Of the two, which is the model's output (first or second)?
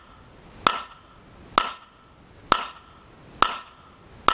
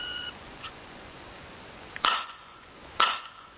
second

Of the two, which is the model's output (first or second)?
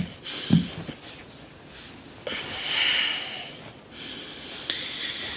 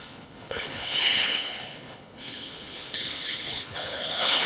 second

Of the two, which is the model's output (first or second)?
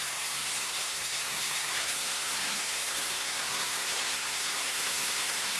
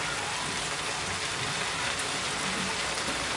first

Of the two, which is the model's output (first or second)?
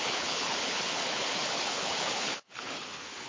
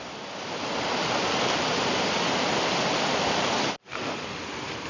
first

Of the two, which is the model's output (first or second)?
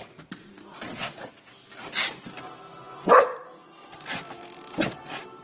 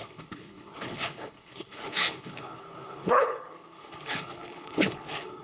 second